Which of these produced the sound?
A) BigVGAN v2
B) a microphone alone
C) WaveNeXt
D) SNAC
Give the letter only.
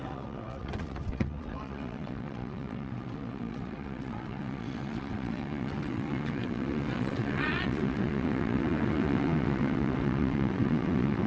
C